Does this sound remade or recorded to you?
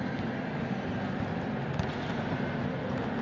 recorded